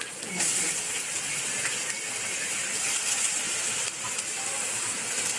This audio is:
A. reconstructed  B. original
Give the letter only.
B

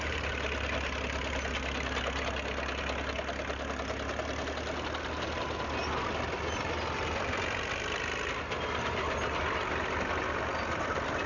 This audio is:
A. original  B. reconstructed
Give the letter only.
A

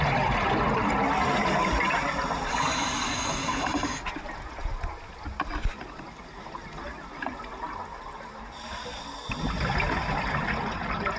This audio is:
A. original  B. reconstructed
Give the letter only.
A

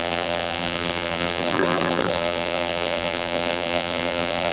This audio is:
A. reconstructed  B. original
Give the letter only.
A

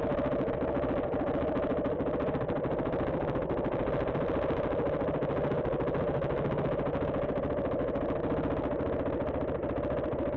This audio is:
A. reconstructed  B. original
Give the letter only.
B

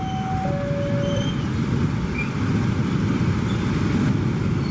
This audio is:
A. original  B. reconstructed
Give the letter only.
A